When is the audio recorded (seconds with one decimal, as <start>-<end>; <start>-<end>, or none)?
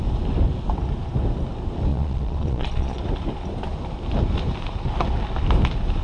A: 0.0-1.9; 3.0-6.0